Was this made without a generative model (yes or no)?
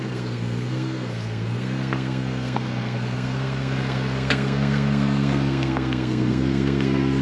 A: no